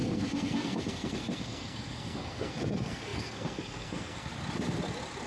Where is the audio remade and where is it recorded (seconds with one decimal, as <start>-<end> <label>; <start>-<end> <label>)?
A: 0.0-4.3 remade; 4.3-5.3 recorded